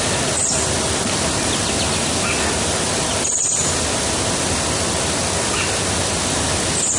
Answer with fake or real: real